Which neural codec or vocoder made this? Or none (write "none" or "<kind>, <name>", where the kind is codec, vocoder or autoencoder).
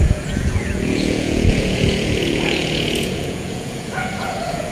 vocoder, Vocos